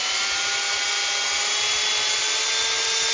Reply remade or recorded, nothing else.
recorded